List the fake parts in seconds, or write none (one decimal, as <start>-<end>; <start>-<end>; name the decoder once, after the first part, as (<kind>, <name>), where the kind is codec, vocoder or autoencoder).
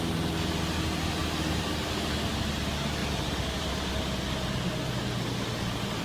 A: 3.0-3.9 (vocoder, BigVGAN v2)